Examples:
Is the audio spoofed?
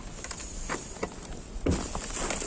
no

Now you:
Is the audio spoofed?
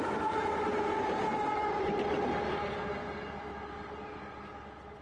no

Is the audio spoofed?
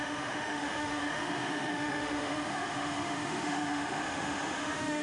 yes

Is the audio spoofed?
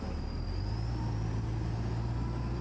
no